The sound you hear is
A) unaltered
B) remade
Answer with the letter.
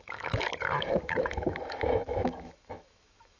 B